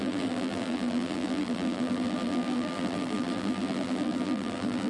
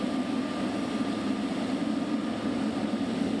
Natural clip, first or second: second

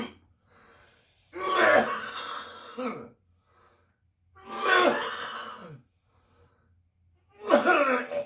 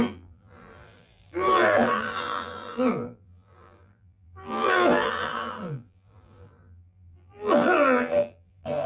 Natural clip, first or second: first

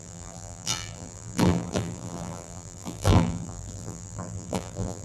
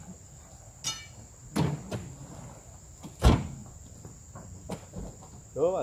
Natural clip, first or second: second